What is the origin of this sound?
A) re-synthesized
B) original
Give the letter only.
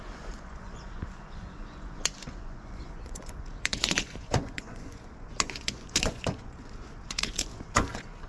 A